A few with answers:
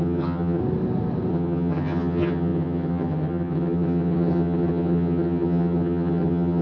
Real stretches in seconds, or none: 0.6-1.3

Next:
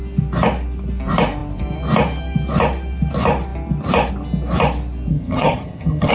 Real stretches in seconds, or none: 0.0-5.1

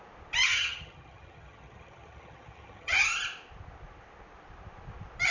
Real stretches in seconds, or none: 0.0-0.5; 3.0-5.3

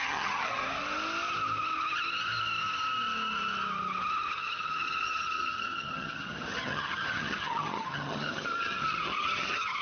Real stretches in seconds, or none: 0.6-4.3

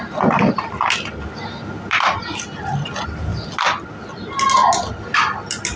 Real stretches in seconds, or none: 0.0-5.8

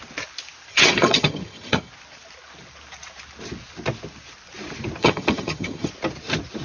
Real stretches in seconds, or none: 0.0-0.7; 1.9-5.0; 5.9-6.6